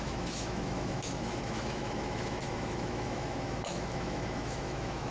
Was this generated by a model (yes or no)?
yes